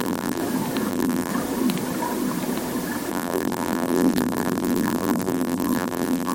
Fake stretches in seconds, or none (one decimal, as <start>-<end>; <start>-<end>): 0.0-0.4; 0.9-1.3; 3.1-6.3